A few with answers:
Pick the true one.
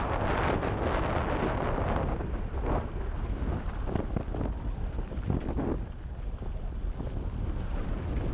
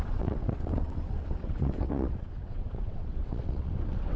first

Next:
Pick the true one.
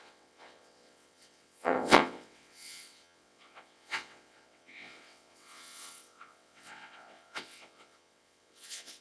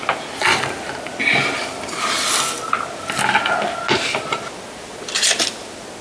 second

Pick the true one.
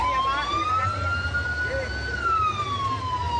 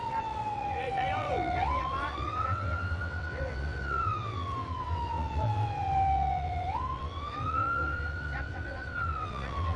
first